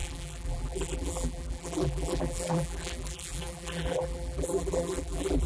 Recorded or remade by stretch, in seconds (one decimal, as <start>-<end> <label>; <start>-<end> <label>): 0.0-5.5 remade